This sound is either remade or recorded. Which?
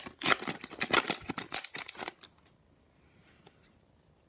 recorded